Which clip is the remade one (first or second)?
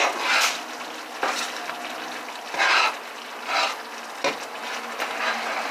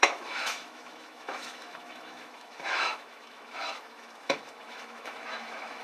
second